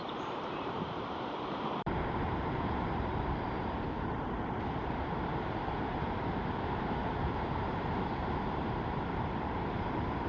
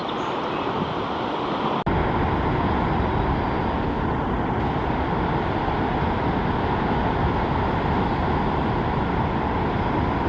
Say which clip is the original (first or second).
second